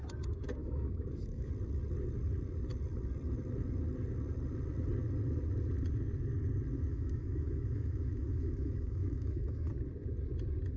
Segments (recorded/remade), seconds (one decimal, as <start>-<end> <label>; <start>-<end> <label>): 0.0-0.6 recorded; 0.6-1.5 remade; 1.5-6.9 recorded; 6.9-9.7 remade; 9.7-10.8 recorded